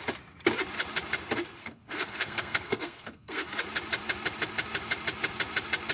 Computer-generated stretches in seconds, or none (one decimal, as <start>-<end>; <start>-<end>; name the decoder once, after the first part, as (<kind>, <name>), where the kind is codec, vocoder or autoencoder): 1.6-3.5 (codec, SNAC)